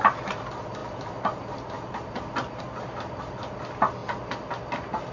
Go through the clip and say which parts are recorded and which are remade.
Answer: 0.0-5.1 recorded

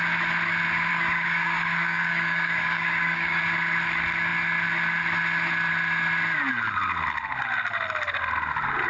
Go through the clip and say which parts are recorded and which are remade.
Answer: 0.0-0.9 recorded; 0.9-3.4 remade; 3.4-8.9 recorded

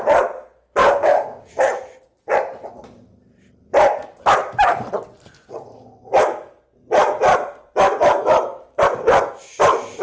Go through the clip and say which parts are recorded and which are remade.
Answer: 0.0-0.8 recorded; 0.8-1.5 remade; 1.5-10.0 recorded

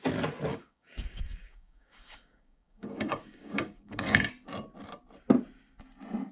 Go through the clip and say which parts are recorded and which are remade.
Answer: 0.0-0.5 recorded; 0.5-4.3 remade; 4.3-6.3 recorded